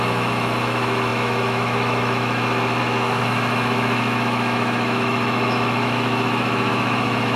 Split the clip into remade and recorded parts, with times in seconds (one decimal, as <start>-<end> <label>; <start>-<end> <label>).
0.0-7.4 remade